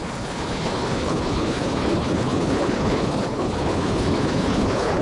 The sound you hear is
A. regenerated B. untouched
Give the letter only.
A